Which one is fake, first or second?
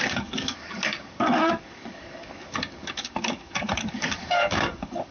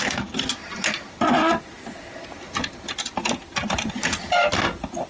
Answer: first